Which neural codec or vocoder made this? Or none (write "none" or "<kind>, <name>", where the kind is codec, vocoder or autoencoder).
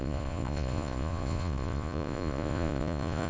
vocoder, Vocos